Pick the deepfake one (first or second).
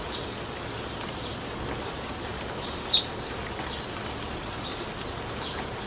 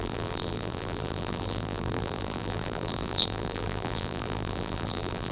second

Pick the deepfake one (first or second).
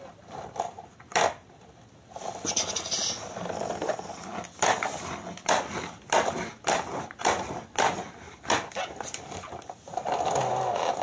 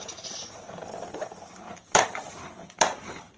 second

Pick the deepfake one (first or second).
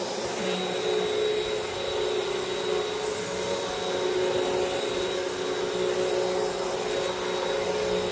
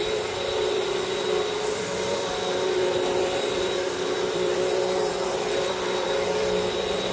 second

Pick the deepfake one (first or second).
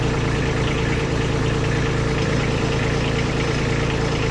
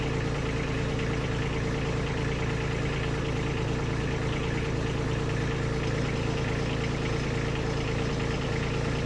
first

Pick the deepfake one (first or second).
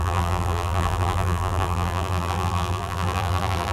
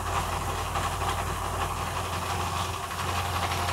first